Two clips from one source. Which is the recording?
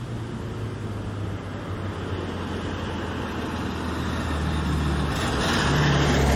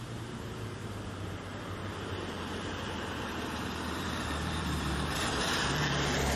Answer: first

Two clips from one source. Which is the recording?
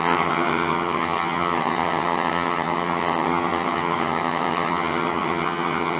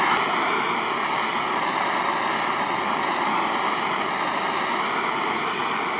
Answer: second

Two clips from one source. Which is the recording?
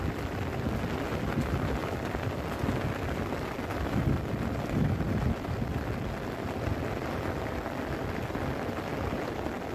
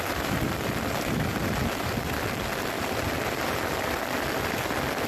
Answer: first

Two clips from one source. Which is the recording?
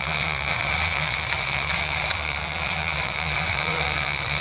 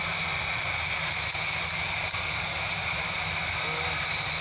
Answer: second